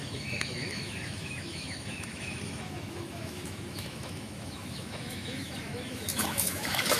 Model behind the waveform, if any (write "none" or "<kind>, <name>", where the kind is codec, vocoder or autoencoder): autoencoder, DAC-VAE